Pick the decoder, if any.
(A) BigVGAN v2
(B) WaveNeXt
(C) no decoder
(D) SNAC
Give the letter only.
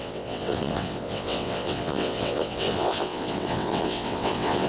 B